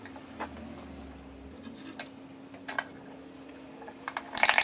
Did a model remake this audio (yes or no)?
no